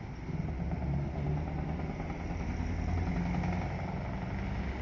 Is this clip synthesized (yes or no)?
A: no